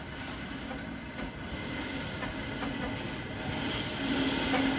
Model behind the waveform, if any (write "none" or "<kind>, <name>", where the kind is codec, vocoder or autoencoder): none